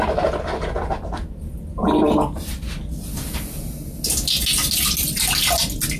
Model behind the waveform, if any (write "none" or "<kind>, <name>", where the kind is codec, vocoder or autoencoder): none